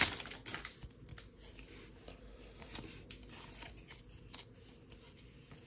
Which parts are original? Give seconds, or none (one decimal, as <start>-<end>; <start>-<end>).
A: 0.0-5.7